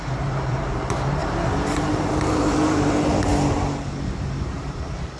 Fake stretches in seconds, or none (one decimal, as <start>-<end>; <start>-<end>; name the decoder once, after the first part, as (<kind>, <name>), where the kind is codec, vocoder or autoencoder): 0.0-1.2 (vocoder, BigVGAN v2); 2.0-3.3; 4.3-5.2